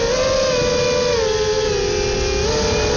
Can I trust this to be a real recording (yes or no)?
yes